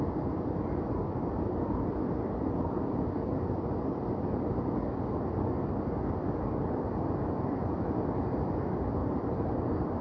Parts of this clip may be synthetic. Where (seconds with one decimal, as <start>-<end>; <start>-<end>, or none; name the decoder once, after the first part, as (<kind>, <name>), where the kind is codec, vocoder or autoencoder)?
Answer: 9.0-9.5 (vocoder, BigVGAN v2)